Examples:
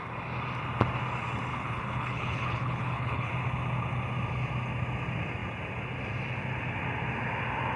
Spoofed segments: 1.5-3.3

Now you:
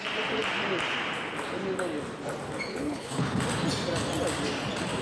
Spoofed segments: 2.7-3.4

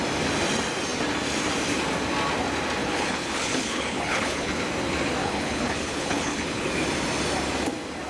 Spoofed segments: 2.8-4.6; 5.2-6.7

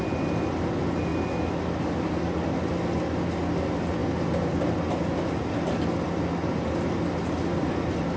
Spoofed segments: none

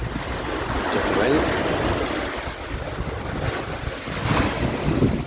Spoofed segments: none

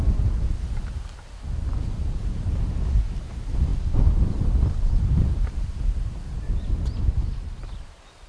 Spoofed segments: none

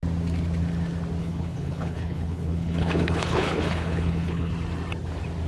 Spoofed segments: 1.2-4.5

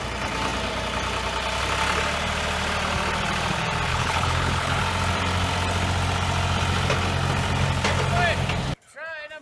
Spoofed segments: 3.9-4.8